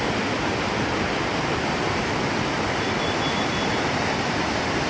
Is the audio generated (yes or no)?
no